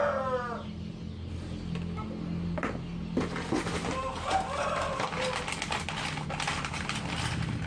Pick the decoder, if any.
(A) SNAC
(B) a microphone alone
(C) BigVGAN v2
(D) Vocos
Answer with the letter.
B